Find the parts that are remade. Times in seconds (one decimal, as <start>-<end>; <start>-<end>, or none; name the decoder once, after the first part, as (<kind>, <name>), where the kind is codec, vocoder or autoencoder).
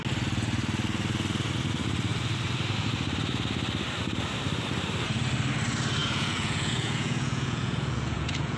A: 6.0-8.6 (vocoder, Vocos)